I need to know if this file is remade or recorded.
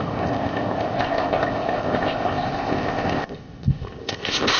remade